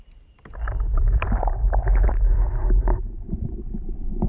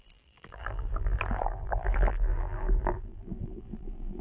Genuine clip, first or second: first